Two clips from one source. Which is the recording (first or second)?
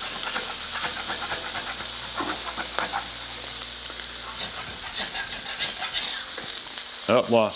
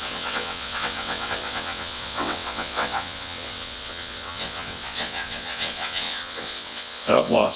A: first